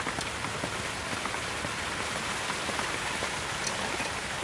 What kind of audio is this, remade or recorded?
recorded